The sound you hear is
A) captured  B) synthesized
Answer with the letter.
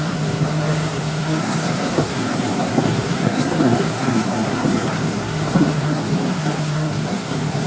B